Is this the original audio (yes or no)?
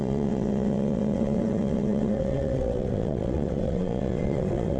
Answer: no